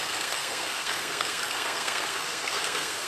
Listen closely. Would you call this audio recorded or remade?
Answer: remade